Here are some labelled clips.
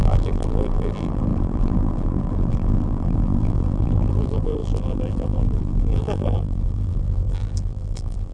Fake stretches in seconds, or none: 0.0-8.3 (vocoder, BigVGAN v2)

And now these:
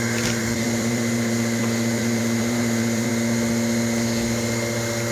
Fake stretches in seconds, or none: 0.4-3.1 (vocoder, BigVGAN v2)

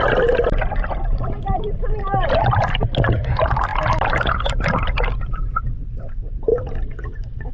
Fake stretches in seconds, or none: 0.9-2.7 (vocoder, BigVGAN v2); 6.5-7.5

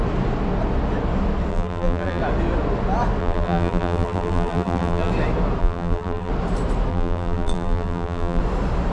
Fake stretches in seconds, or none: 1.5-2.2 (vocoder, BigVGAN v2); 3.2-5.1; 5.6-6.3; 6.9-8.4